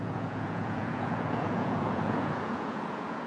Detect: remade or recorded remade